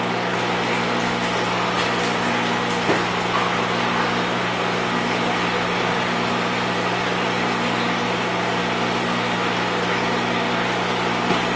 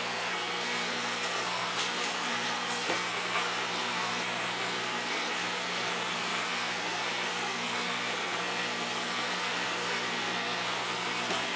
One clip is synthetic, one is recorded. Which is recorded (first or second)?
first